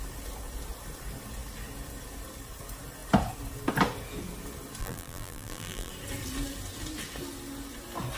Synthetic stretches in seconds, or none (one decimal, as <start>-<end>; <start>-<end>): 4.8-5.9